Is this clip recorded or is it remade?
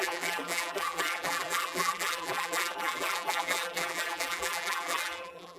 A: remade